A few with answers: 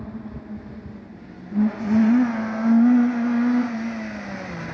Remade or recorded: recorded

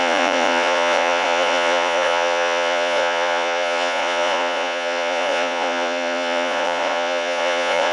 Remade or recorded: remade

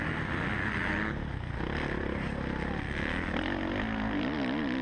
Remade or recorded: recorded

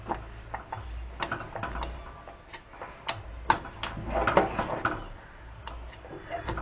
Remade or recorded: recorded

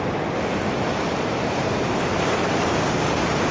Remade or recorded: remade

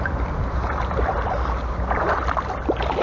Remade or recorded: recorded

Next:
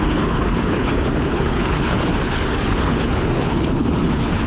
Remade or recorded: remade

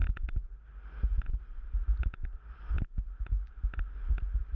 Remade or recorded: recorded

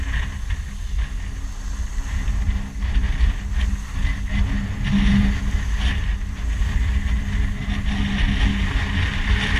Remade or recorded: recorded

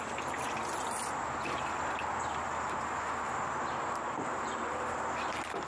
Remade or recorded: recorded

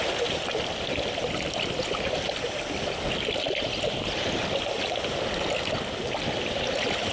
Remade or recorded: recorded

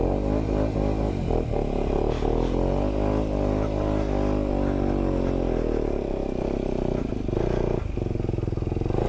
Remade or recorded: recorded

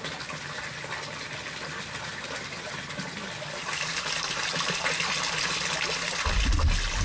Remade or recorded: recorded